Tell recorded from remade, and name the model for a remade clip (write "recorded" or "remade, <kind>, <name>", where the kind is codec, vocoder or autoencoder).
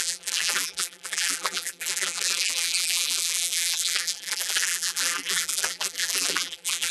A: remade, vocoder, BigVGAN v2